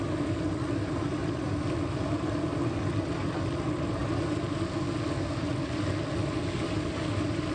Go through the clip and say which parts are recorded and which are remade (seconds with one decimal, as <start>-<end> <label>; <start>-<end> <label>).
0.0-1.2 recorded; 1.2-3.4 remade; 3.4-7.5 recorded